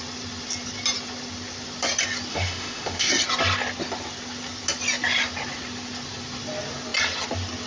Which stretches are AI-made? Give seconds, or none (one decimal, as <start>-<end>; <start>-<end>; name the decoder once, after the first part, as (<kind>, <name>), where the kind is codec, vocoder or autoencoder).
2.3-3.1 (autoencoder, DAC-VAE)